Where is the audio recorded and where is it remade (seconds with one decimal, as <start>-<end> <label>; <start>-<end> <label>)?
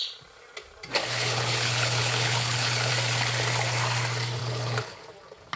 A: 0.0-1.0 recorded; 1.0-2.9 remade; 2.9-4.4 recorded; 4.4-5.0 remade; 5.0-5.6 recorded